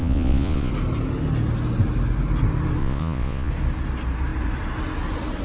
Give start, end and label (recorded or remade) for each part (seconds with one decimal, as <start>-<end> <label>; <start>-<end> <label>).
0.0-0.7 remade; 0.7-2.8 recorded; 2.8-3.5 remade; 3.5-5.4 recorded